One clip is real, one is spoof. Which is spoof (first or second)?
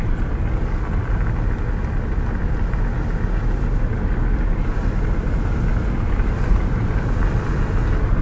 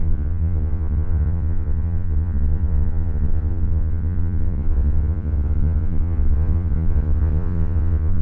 second